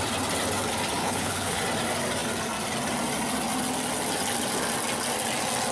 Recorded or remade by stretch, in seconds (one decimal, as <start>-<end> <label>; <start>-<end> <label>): 0.0-1.0 recorded; 1.0-1.6 remade; 1.6-5.7 recorded